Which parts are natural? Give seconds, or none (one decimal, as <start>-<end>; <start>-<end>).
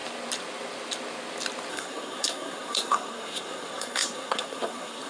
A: 0.0-1.7